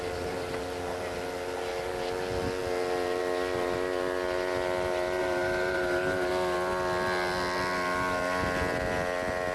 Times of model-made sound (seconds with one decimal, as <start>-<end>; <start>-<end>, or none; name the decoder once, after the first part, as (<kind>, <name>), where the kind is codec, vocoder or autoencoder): 5.2-6.3 (vocoder, BigVGAN v2)